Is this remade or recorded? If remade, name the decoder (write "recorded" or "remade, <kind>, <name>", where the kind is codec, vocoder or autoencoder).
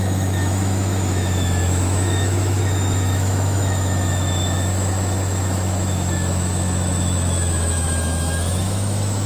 remade, autoencoder, DAC-VAE